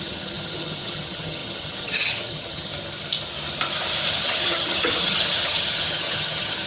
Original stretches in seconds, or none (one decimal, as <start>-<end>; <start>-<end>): 2.7-4.1